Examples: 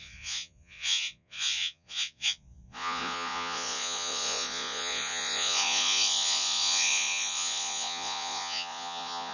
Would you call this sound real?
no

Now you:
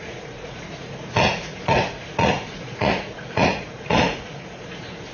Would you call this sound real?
no